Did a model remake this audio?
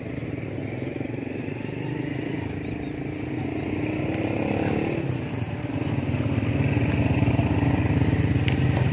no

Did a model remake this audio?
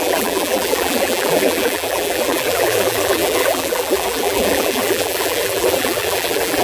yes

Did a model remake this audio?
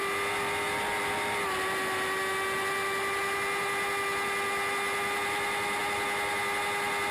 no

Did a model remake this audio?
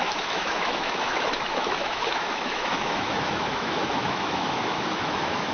yes